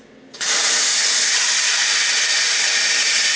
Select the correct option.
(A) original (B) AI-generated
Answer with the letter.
A